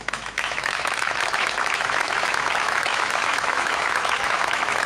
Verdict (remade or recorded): remade